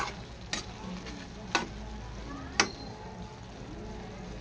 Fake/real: real